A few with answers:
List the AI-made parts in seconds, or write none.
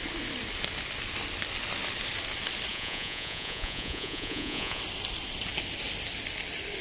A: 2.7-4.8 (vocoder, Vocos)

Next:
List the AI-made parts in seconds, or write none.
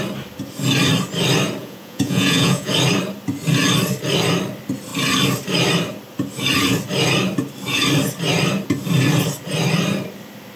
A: 1.6-2.7 (vocoder, Vocos)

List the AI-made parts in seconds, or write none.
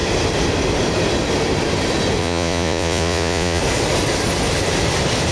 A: 2.2-3.6 (vocoder, Vocos)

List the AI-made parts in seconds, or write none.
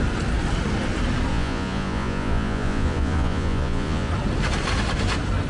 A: 1.3-4.1 (vocoder, Vocos)